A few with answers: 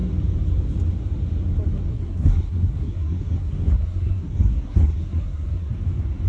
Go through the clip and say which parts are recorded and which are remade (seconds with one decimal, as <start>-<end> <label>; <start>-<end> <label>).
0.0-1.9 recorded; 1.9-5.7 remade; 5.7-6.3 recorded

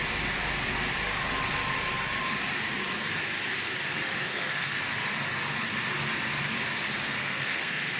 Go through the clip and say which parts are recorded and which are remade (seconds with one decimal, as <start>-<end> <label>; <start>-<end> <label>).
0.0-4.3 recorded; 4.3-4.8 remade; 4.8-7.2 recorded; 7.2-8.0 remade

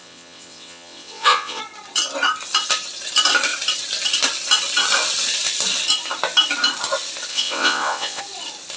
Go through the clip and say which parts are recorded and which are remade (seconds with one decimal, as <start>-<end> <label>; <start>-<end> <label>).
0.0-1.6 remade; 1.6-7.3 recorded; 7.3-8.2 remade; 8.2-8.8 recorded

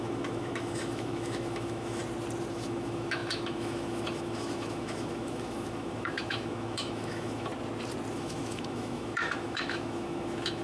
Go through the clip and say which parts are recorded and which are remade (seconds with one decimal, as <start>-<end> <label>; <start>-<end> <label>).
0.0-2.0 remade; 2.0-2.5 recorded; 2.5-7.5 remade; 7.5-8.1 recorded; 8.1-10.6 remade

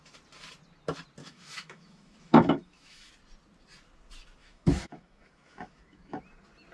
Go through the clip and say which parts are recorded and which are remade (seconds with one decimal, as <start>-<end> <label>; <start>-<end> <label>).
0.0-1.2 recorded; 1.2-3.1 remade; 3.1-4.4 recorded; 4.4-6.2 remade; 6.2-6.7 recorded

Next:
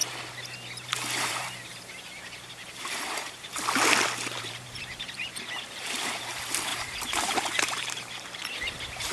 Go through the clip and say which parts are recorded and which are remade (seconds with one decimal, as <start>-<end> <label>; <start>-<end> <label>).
0.0-1.2 recorded; 1.2-3.5 remade; 3.5-4.4 recorded; 4.4-9.1 remade

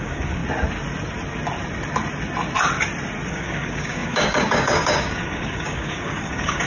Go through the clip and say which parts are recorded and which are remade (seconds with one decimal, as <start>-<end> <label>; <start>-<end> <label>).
0.0-0.4 remade; 0.4-3.3 recorded; 3.3-6.7 remade